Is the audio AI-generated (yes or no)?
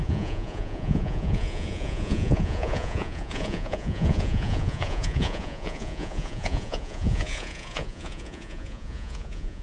yes